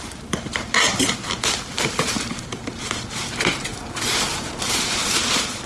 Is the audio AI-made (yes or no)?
yes